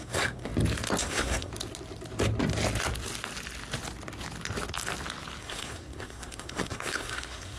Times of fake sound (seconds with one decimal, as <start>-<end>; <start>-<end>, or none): 0.0-0.5; 1.0-1.5; 5.4-7.6